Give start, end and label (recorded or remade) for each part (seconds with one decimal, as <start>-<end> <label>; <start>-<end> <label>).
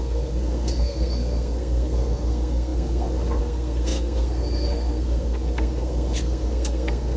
0.0-7.2 remade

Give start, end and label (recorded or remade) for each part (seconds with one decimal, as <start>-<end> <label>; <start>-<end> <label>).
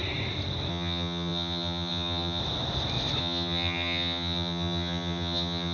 0.0-0.7 recorded; 0.7-2.4 remade; 2.4-3.2 recorded; 3.2-5.7 remade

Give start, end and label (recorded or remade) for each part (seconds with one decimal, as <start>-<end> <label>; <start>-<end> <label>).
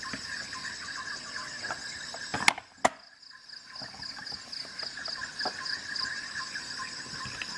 0.0-7.6 recorded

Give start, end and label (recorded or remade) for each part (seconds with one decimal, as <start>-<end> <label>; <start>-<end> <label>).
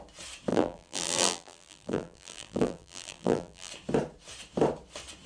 0.0-0.5 recorded; 0.5-3.7 remade; 3.7-5.3 recorded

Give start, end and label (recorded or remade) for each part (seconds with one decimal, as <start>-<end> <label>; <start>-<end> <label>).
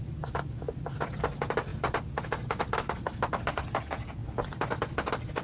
0.0-5.4 recorded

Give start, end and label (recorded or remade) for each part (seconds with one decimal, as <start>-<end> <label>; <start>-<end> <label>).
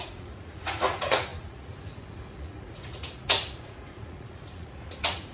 0.0-5.3 remade